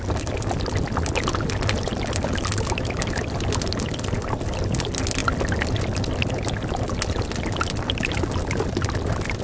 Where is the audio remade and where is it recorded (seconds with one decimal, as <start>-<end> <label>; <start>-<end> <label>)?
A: 0.0-9.4 recorded

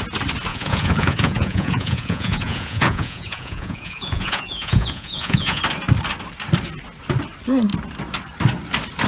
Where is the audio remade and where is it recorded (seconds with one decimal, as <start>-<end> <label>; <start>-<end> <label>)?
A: 0.0-0.5 recorded; 0.5-5.6 remade; 5.6-9.1 recorded

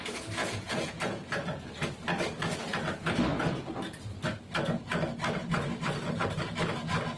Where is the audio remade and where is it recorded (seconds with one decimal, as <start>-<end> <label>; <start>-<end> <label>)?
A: 0.0-0.4 recorded; 0.4-1.7 remade; 1.7-7.2 recorded